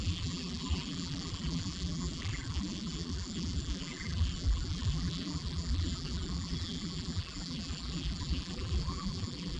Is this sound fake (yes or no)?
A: yes